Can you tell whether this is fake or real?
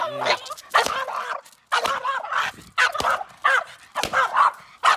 real